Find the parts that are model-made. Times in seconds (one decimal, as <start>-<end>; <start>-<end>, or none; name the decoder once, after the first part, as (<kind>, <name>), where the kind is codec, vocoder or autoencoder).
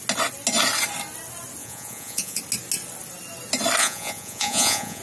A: 1.6-2.4 (vocoder, Vocos); 3.8-5.0